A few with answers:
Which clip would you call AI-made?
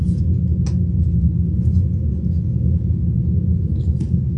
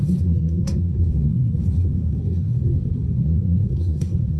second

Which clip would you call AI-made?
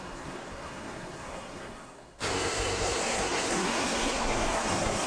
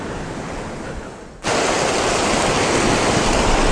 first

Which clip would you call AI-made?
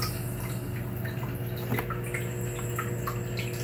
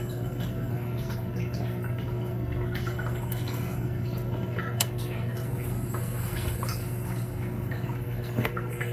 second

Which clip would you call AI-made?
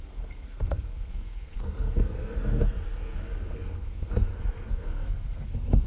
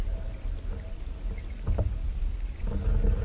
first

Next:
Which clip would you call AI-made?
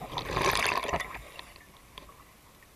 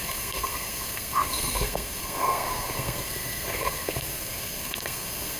second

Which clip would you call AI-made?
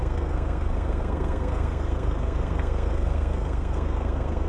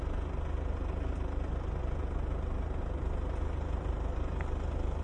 first